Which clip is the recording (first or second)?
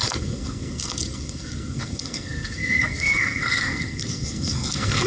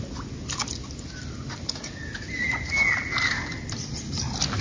second